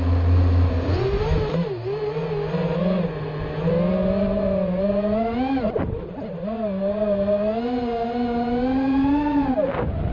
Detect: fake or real real